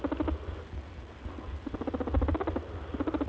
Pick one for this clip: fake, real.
real